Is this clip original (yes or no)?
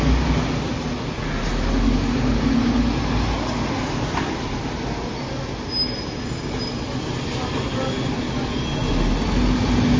yes